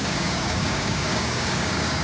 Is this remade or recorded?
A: remade